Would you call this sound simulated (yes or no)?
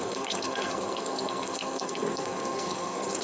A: yes